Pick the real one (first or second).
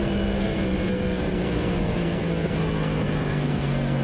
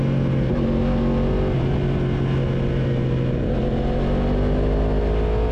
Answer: second